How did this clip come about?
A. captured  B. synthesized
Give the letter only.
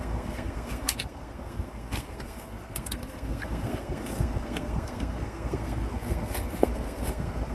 B